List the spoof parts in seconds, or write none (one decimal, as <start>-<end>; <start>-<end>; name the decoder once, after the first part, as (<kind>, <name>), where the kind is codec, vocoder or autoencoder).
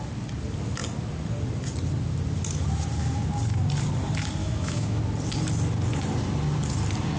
4.4-5.0 (autoencoder, DAC-VAE)